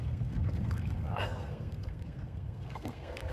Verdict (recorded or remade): remade